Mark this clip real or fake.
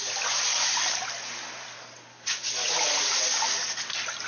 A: real